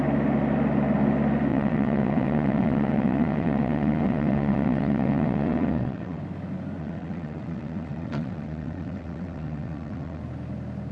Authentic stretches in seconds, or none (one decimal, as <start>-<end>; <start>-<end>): 0.0-1.5; 6.2-6.8; 10.2-10.9